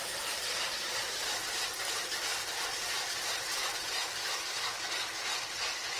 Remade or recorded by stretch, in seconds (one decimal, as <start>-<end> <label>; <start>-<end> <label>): 0.0-1.5 remade; 1.5-2.3 recorded; 2.3-4.5 remade; 4.5-6.0 recorded